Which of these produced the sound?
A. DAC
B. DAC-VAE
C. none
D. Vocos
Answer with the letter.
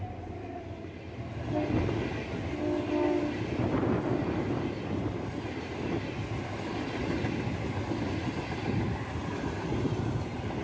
C